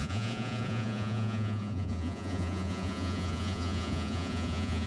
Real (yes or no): no